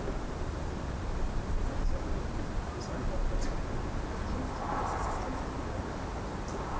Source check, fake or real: real